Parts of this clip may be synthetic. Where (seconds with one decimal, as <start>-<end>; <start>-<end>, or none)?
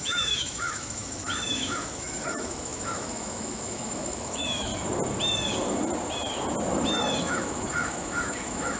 0.0-4.7; 7.2-8.8